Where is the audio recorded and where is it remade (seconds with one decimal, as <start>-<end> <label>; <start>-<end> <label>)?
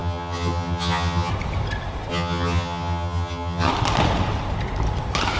0.0-1.3 remade; 1.3-2.1 recorded; 2.1-3.7 remade; 3.7-5.4 recorded